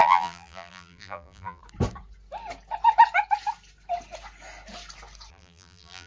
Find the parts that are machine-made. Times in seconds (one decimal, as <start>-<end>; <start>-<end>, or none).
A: 0.0-1.6; 5.3-6.1